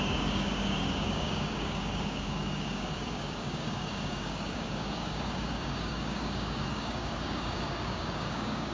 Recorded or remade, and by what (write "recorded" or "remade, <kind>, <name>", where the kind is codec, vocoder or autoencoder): remade, codec, DAC